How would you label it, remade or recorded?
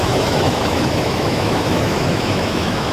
remade